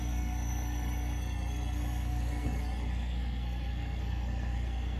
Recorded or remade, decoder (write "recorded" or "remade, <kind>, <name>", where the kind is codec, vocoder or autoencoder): remade, codec, SNAC